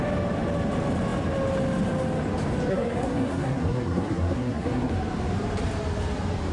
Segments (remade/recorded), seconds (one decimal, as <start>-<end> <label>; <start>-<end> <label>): 0.0-2.7 recorded; 2.7-4.9 remade; 4.9-6.5 recorded